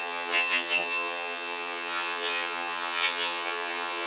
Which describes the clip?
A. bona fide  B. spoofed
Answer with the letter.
B